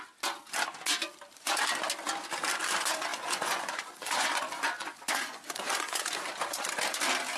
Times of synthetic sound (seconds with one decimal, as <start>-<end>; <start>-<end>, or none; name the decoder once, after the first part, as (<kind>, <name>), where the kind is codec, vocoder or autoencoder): 3.1-6.0 (vocoder, Vocos)